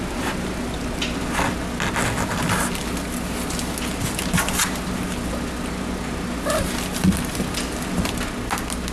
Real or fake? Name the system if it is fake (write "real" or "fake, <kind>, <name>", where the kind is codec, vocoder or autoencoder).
real